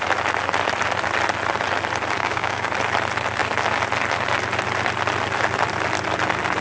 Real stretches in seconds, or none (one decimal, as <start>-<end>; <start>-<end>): 0.0-2.2; 2.7-6.6